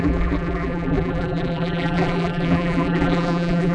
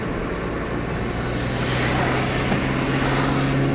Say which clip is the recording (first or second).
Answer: second